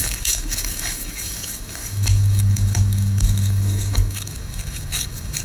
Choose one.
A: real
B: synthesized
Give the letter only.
B